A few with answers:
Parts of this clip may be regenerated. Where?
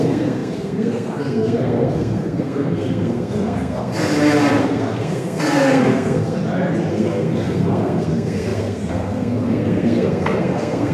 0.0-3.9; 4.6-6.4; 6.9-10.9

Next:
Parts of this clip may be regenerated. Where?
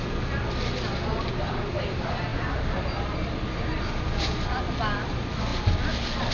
none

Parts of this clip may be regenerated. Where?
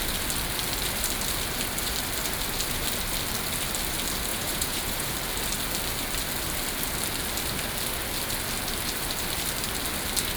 4.3-5.1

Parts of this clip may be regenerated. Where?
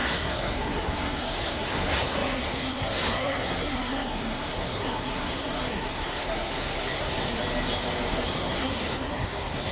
0.0-7.4; 8.1-9.7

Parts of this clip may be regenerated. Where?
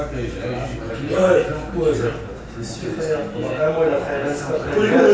none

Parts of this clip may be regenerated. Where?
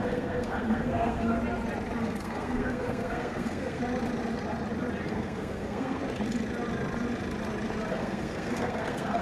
0.0-1.4; 2.0-3.8; 5.1-6.0; 7.9-9.2